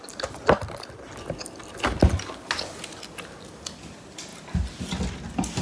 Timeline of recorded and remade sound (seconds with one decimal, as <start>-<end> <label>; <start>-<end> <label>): 0.0-5.6 recorded